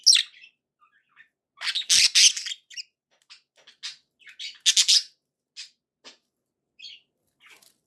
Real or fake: real